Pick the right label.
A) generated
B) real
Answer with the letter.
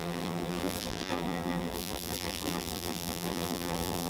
A